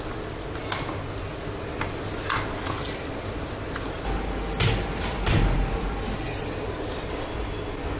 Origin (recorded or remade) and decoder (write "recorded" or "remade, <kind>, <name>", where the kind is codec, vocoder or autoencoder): recorded